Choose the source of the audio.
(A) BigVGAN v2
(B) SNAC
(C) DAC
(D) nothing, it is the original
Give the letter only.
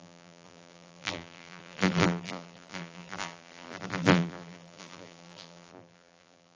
A